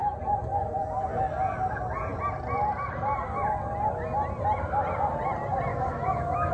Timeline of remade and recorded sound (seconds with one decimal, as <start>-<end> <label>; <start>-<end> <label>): 0.0-5.7 recorded; 5.7-6.5 remade